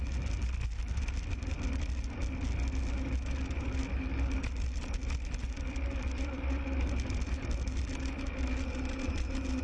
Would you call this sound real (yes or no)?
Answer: yes